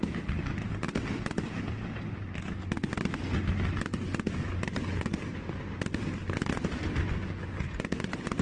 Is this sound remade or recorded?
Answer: recorded